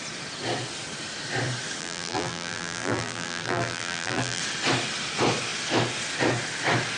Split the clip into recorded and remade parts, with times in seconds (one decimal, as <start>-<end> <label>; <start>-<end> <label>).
0.0-1.8 recorded; 1.8-4.4 remade; 4.4-7.0 recorded